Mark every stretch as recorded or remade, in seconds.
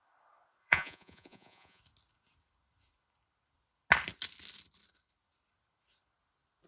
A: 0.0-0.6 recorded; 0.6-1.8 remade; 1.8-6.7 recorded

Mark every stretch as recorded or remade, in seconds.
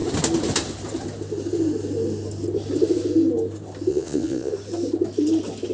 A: 0.0-3.9 recorded; 3.9-4.5 remade; 4.5-5.7 recorded